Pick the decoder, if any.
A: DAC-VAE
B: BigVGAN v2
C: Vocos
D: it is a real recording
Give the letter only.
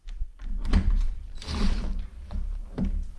B